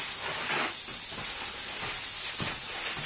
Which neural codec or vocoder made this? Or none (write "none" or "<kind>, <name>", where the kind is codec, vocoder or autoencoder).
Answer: none